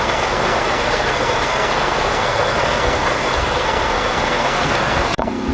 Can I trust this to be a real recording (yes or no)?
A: no